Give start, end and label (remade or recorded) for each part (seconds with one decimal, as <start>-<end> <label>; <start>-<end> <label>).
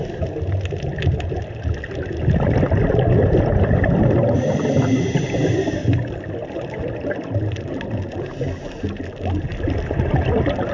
0.0-10.7 recorded